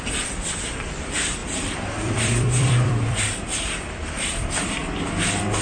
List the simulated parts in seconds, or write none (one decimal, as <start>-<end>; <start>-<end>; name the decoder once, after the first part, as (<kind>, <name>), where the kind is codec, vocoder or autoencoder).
0.0-4.8 (vocoder, BigVGAN v2)